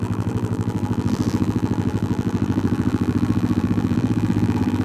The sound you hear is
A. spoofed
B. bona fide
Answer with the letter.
A